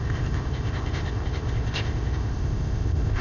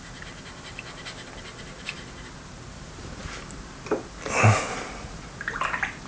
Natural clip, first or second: second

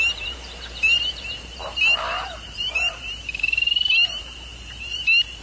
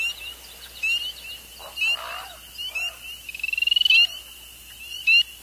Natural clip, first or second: second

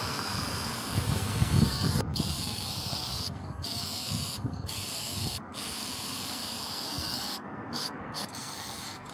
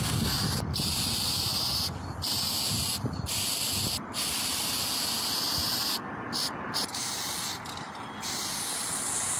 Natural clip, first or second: second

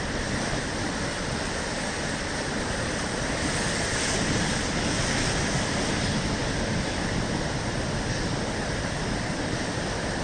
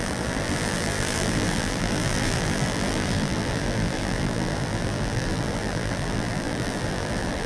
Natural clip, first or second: first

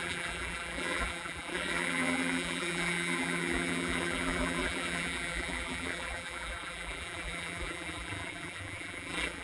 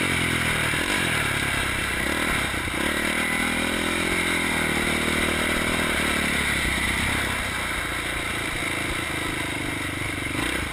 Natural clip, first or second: second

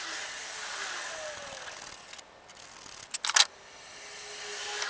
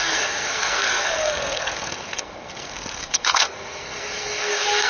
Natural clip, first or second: first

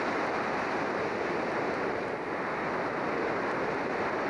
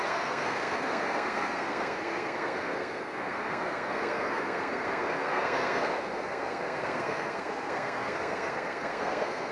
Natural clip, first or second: first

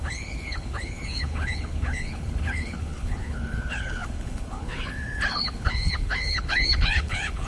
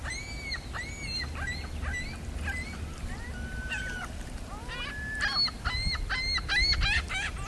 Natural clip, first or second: second